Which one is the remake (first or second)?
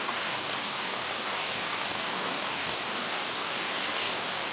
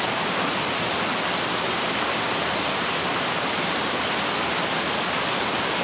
first